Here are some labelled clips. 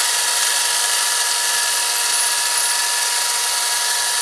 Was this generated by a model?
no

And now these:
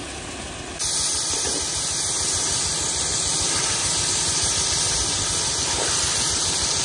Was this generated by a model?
no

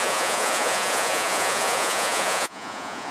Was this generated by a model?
yes